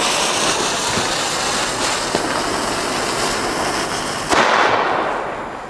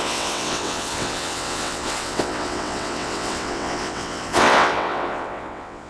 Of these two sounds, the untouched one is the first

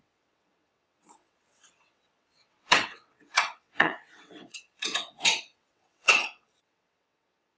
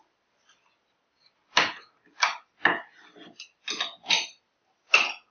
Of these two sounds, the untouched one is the second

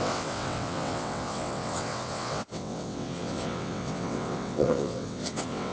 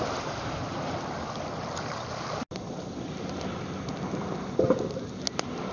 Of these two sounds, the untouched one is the second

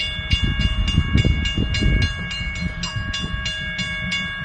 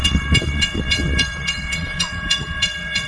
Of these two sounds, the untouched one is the first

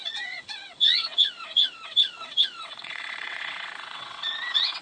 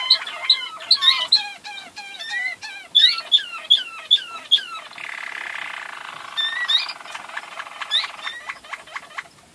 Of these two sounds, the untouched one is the second